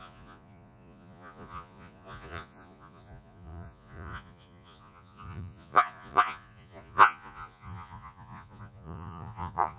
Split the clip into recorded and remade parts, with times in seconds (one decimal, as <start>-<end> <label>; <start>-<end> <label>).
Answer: 0.0-9.8 remade